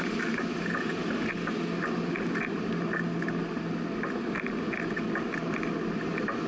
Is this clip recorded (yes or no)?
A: yes